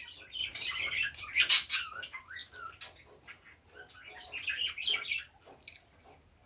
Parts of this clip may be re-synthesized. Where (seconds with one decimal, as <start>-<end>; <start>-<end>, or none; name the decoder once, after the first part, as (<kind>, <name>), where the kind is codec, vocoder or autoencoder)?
0.4-1.5 (vocoder, BigVGAN v2)